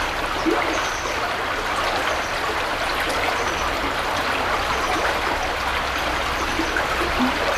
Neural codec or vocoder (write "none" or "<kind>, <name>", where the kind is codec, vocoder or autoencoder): none